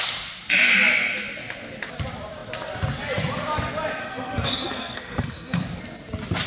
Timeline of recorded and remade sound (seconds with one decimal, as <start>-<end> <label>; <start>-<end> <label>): 0.0-4.0 recorded; 4.0-5.8 remade; 5.8-6.5 recorded